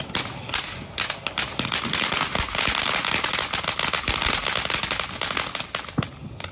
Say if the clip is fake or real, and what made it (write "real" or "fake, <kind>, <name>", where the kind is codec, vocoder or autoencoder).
real